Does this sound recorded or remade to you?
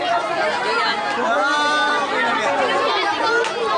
recorded